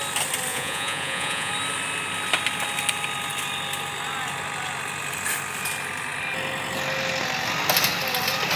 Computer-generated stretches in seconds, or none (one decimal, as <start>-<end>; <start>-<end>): 0.5-1.5